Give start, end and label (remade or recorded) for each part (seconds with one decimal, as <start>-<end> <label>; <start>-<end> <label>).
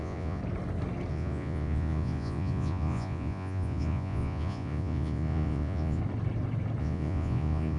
0.0-0.4 remade; 0.4-1.1 recorded; 1.1-6.0 remade; 6.0-6.8 recorded; 6.8-7.8 remade